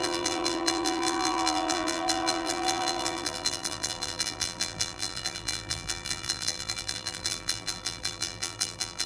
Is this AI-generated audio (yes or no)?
yes